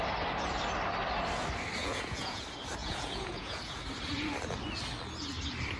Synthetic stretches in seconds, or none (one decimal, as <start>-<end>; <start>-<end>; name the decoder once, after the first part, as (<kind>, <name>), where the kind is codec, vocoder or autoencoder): 1.8-2.4 (vocoder, Vocos); 2.8-3.8